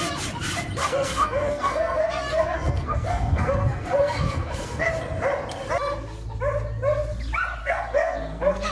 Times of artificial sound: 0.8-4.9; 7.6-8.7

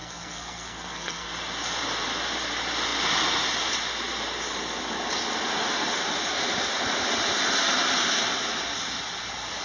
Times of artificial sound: 0.0-1.3

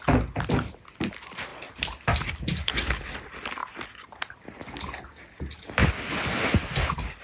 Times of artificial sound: 1.5-3.0; 3.6-4.3; 5.8-6.3

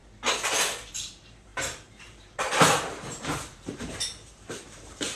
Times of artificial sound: 0.9-5.2

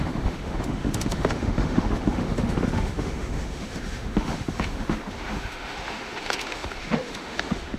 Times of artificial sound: 0.0-7.8

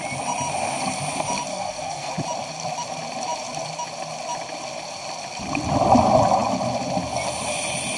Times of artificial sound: 1.5-2.1

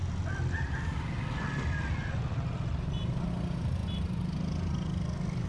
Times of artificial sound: 0.0-3.3; 3.8-4.7